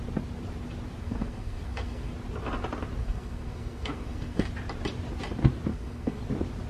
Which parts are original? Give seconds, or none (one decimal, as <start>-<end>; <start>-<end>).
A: 0.0-1.0; 2.1-3.0; 4.5-5.7; 6.2-6.7